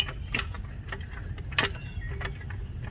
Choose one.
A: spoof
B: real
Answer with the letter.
B